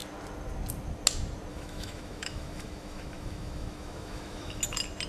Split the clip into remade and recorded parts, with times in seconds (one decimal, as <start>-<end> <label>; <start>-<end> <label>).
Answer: 0.0-1.5 recorded; 1.5-4.6 remade; 4.6-5.1 recorded